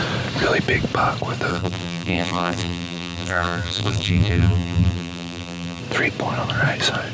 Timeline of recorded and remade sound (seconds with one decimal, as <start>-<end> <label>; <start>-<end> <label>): 0.0-1.5 recorded; 1.5-5.8 remade; 5.8-7.1 recorded